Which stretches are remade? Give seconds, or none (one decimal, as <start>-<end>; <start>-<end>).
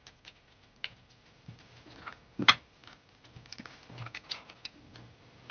none